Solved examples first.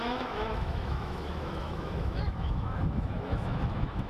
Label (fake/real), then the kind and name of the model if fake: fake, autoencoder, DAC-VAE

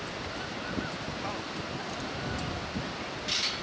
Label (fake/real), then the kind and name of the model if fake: real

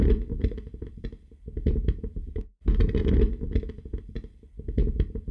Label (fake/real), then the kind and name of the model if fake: fake, vocoder, BigVGAN v2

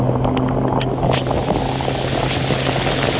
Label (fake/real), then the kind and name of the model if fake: real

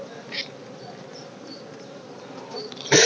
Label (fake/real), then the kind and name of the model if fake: real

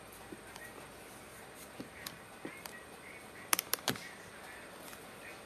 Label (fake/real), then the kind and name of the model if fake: real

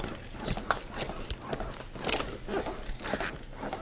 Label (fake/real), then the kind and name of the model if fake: real